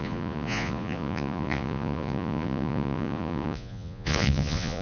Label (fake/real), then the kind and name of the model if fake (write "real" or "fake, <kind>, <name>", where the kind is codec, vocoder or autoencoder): fake, vocoder, Vocos